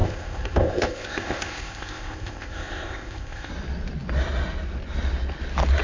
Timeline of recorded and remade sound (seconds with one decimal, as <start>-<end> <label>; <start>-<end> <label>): 0.0-3.5 remade; 3.5-5.8 recorded